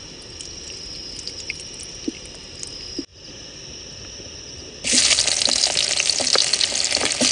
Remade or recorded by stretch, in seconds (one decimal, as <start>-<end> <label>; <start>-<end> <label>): 0.0-7.3 recorded